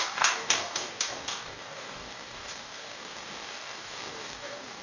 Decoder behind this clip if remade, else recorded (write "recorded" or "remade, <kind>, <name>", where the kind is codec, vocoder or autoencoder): remade, codec, DAC